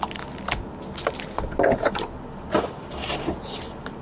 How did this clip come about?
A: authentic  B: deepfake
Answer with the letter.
A